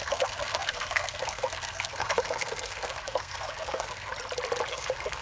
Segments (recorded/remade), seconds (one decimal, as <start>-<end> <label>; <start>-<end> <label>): 0.0-4.1 remade; 4.1-4.7 recorded; 4.7-5.2 remade